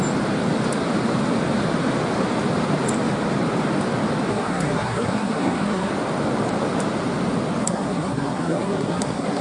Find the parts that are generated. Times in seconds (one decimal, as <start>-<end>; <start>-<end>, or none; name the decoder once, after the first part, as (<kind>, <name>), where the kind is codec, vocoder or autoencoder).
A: 4.3-5.9 (codec, SNAC); 7.6-9.4